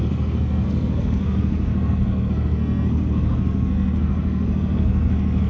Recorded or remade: remade